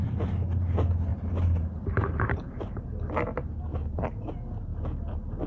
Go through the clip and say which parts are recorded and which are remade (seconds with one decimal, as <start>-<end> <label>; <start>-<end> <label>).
0.0-1.1 recorded; 1.1-3.0 remade; 3.0-3.7 recorded; 3.7-4.3 remade; 4.3-5.5 recorded